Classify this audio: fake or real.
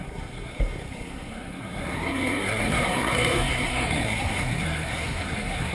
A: fake